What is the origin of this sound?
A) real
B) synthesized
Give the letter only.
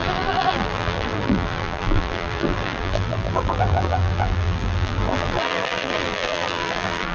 B